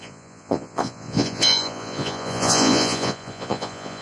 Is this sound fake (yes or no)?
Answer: yes